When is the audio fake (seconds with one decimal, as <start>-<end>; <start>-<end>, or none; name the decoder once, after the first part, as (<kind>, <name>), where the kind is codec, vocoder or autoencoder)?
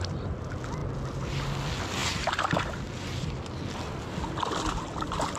none